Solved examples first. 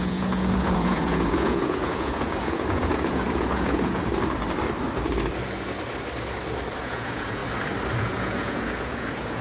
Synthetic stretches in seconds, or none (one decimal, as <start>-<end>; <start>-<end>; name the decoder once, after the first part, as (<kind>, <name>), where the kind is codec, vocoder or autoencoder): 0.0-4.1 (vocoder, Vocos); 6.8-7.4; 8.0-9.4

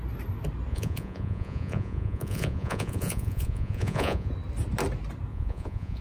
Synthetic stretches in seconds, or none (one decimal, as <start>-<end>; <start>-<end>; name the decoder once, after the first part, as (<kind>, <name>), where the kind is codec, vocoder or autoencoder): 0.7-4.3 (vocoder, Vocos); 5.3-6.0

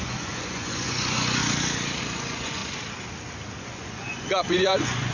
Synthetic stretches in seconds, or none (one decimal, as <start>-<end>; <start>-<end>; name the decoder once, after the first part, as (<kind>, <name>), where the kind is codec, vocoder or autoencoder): 0.0-1.4 (vocoder, Vocos); 2.0-2.6; 3.6-5.1

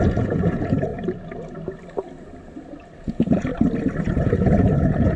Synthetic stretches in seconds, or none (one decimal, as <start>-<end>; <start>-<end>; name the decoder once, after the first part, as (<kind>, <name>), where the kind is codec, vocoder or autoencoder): 0.0-0.9 (vocoder, Vocos); 3.0-3.5; 4.0-5.2